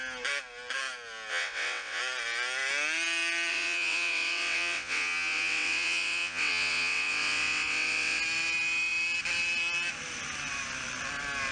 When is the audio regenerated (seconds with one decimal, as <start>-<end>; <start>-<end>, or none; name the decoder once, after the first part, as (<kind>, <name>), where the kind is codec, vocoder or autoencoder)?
1.3-2.0 (vocoder, WaveNeXt); 3.5-8.2